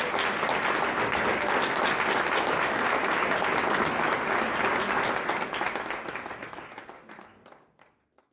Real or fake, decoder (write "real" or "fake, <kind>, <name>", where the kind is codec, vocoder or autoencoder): real